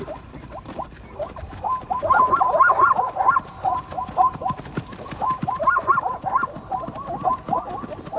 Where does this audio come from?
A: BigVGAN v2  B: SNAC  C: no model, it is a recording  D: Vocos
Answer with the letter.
C